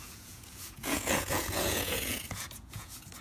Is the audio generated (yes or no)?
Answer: yes